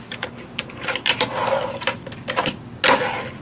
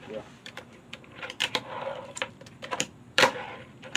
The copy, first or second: second